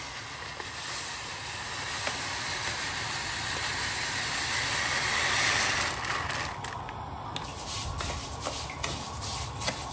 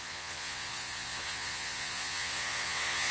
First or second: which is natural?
first